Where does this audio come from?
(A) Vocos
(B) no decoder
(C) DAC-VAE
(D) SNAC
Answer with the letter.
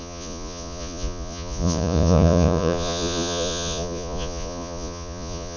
A